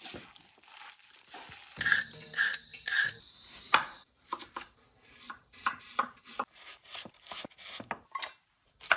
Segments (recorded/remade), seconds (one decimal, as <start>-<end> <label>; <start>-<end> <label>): 0.0-2.7 recorded; 2.7-7.2 remade; 7.2-9.0 recorded